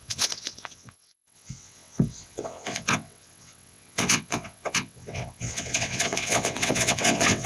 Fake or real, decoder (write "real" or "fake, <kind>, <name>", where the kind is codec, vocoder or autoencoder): fake, vocoder, WaveNeXt